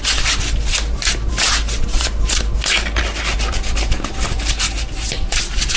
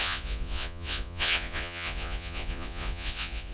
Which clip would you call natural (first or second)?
first